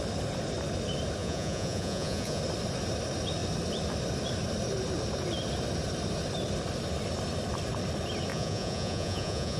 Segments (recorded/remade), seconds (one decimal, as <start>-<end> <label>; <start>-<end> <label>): 0.0-1.2 recorded; 1.2-2.4 remade; 2.4-8.3 recorded; 8.3-9.6 remade